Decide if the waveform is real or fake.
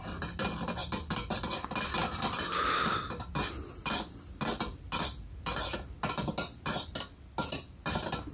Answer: real